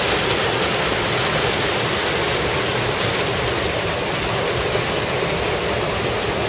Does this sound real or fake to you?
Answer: real